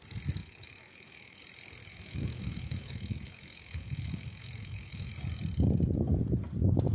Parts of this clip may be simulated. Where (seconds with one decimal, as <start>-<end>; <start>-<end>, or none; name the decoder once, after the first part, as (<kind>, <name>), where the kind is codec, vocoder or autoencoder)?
0.4-1.4 (autoencoder, DAC-VAE); 1.9-5.1